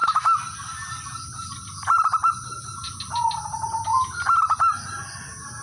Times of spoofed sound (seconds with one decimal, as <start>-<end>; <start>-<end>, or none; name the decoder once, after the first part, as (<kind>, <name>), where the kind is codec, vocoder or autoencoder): 0.0-3.9 (vocoder, BigVGAN v2)